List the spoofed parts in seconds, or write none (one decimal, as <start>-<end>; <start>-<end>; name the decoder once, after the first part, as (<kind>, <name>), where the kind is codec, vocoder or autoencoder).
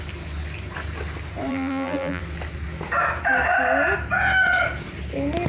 1.5-2.2 (vocoder, BigVGAN v2)